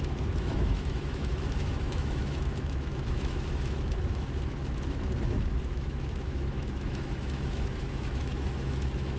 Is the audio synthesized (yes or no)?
yes